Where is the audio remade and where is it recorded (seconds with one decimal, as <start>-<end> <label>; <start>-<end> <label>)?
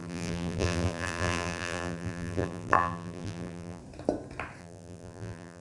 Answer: 0.0-3.8 remade; 3.8-4.6 recorded; 4.6-5.6 remade